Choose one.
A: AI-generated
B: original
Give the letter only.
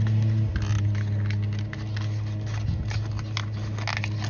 B